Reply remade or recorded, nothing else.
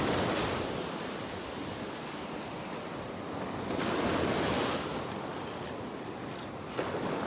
recorded